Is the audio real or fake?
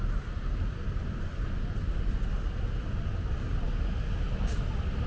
real